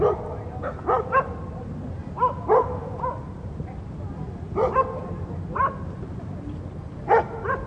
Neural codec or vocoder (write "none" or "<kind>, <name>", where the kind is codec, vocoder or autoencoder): none